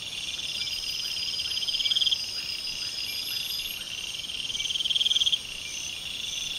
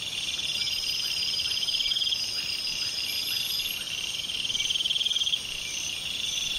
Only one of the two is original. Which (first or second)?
first